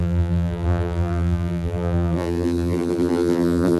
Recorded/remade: remade